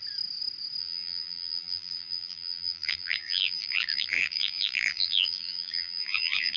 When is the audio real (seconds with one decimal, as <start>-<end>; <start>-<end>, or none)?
0.0-0.8